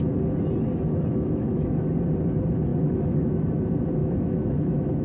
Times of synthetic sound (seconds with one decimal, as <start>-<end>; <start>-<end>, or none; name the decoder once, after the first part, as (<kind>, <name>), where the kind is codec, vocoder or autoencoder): 1.1-1.9 (autoencoder, DAC-VAE); 2.7-3.4; 4.0-5.0